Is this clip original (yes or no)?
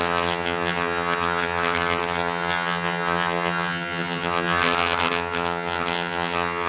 no